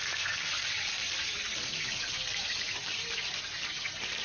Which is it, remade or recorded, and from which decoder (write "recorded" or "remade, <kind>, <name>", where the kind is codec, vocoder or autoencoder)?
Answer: recorded